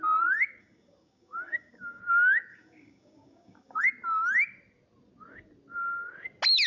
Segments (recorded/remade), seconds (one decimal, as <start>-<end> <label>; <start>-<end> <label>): 0.0-0.6 recorded; 0.6-2.0 remade; 2.0-2.5 recorded; 2.5-3.8 remade; 3.8-6.7 recorded